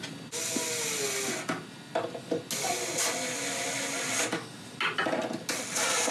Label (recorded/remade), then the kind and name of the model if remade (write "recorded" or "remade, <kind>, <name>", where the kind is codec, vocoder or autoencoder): recorded